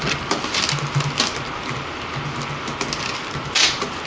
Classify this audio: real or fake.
real